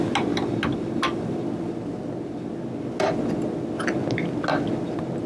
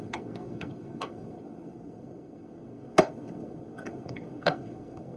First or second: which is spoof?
second